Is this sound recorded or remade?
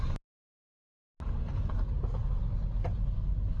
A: recorded